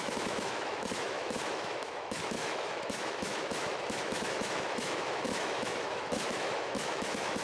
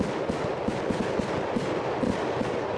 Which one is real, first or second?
second